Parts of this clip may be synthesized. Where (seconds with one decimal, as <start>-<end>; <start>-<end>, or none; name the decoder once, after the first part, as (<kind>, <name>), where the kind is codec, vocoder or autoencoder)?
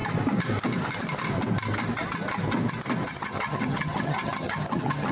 3.1-5.1 (vocoder, HiFi-GAN)